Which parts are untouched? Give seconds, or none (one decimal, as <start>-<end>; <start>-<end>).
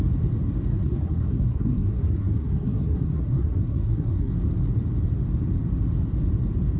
0.0-0.7; 4.3-6.8